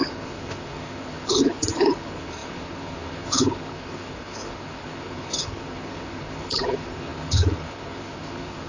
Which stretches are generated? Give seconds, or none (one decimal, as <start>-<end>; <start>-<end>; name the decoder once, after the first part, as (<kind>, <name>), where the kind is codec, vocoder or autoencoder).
0.0-8.7 (codec, HILCodec)

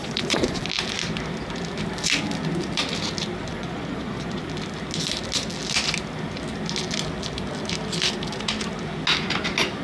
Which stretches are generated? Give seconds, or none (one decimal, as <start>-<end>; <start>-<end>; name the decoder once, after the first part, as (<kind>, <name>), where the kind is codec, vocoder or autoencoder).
0.0-0.6 (vocoder, Vocos); 3.5-4.4

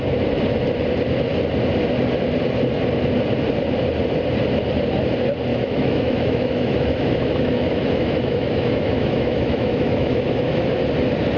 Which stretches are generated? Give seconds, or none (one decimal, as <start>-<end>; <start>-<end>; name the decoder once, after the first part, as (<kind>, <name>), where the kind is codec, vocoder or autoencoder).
5.5-10.5 (autoencoder, DAC-VAE)

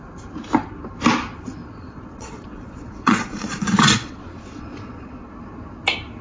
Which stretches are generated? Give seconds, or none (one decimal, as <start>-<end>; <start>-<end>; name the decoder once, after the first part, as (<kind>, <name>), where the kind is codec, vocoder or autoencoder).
1.6-5.3 (vocoder, Vocos)

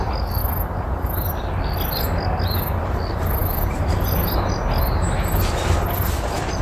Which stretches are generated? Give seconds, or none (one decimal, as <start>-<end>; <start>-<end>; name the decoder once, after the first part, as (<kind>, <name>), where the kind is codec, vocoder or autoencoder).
none

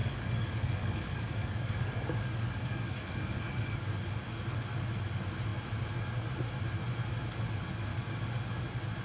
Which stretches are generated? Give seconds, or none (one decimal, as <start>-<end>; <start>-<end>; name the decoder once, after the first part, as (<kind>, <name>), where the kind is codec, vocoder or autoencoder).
0.0-3.9 (codec, DAC); 7.9-8.6